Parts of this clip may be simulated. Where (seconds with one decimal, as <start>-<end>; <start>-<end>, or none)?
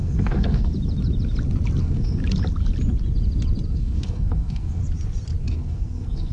0.0-0.7; 1.8-2.2; 3.7-4.8; 5.4-6.3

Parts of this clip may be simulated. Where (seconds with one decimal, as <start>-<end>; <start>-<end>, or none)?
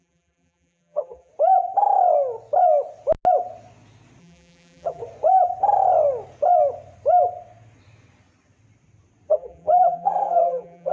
0.0-1.3; 4.2-5.0; 9.3-10.9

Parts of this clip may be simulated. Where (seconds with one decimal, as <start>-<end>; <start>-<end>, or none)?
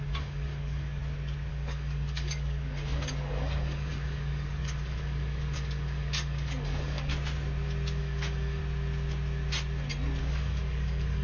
0.0-1.0; 1.5-7.1; 8.0-8.6; 10.2-11.2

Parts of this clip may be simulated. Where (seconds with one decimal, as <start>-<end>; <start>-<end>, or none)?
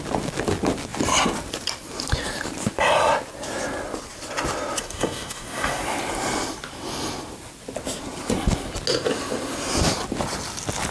4.8-5.8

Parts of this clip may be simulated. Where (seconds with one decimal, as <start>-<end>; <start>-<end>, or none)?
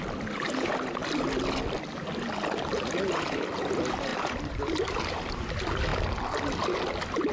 4.1-4.9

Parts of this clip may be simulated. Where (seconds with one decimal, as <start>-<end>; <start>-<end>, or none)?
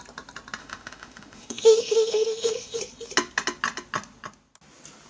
0.6-2.8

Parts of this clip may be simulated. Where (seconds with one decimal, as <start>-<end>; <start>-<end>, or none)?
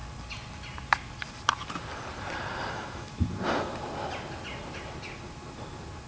2.7-3.1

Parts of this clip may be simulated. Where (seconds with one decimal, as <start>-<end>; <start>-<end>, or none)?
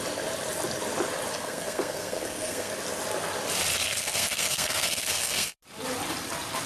1.3-2.7; 3.9-5.6